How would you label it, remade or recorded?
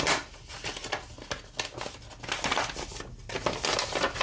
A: recorded